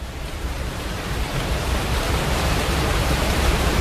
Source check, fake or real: fake